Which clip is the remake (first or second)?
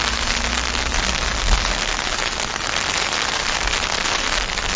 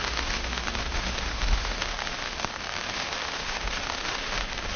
second